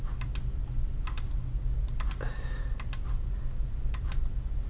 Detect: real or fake real